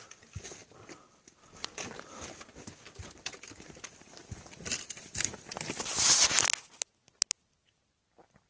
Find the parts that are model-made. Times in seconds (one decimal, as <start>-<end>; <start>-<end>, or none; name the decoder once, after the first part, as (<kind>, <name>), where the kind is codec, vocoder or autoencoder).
none